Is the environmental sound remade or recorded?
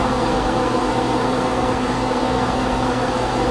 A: remade